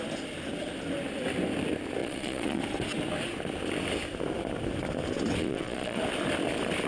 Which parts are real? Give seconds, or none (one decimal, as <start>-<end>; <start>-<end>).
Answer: 0.0-2.0; 2.6-5.4; 6.0-6.9